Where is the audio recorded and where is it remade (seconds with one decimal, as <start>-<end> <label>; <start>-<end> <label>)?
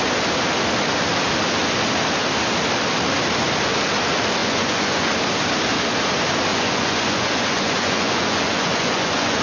0.0-4.4 recorded; 4.4-5.1 remade; 5.1-6.5 recorded; 6.5-9.4 remade